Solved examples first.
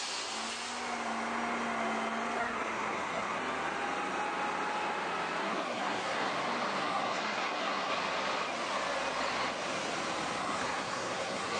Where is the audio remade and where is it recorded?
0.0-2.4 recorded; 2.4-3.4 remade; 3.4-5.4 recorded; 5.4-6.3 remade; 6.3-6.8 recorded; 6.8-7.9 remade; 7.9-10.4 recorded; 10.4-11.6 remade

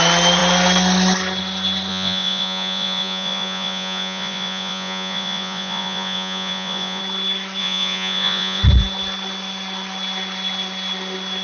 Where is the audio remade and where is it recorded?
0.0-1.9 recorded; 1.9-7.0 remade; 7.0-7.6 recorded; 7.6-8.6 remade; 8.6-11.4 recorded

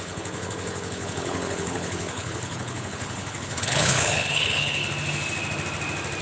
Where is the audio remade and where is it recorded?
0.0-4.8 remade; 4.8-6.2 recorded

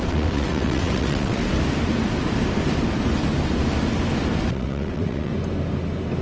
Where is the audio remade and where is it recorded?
0.0-1.4 remade; 1.4-4.5 recorded; 4.5-5.3 remade; 5.3-6.2 recorded

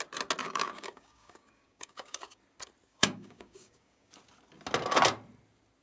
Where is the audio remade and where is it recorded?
0.0-0.4 recorded; 0.4-2.4 remade; 2.4-2.9 recorded; 2.9-4.1 remade; 4.1-5.8 recorded

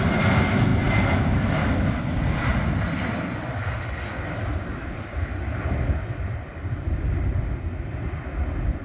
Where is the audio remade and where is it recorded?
0.0-8.8 recorded

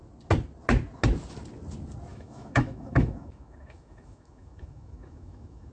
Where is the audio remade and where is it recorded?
0.0-2.1 recorded; 2.1-5.7 remade

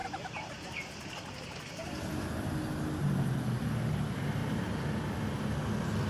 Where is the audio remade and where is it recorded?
0.0-2.5 remade; 2.5-4.4 recorded; 4.4-5.0 remade; 5.0-6.1 recorded